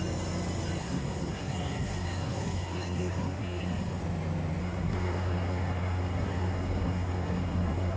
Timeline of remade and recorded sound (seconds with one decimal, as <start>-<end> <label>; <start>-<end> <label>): 0.0-0.8 recorded; 0.8-4.0 remade; 4.0-4.6 recorded; 4.6-8.0 remade